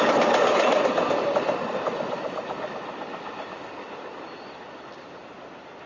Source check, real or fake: real